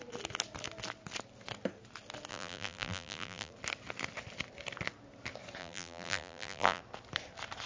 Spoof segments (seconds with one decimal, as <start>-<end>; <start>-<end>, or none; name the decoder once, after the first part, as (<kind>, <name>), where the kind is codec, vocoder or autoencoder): 2.3-3.5 (vocoder, BigVGAN v2); 5.6-6.8